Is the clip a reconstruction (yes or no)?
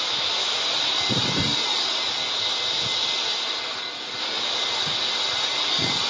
no